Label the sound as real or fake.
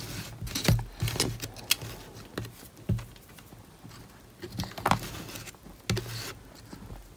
real